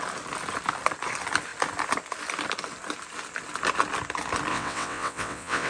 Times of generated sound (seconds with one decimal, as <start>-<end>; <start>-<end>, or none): 4.5-5.7

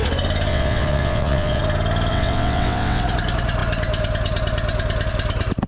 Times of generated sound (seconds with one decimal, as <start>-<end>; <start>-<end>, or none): 0.5-1.6; 2.1-3.0

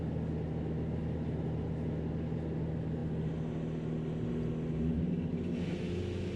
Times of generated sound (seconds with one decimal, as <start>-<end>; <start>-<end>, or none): none

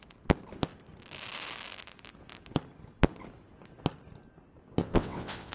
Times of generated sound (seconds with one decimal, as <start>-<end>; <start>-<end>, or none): 4.8-5.5

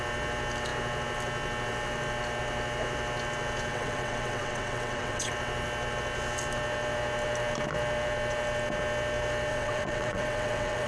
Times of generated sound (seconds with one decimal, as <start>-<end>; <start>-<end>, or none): 3.7-5.3; 9.5-10.9

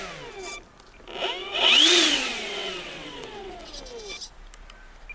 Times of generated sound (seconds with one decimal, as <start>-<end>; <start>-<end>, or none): 1.4-3.8

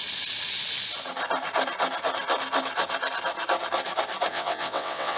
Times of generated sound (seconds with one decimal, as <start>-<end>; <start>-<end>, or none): 4.3-5.2

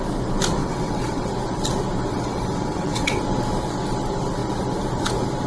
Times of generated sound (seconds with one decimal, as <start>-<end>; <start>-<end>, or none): 0.6-1.3; 2.1-3.2